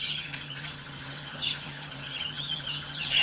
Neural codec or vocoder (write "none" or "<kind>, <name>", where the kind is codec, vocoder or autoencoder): vocoder, HiFi-GAN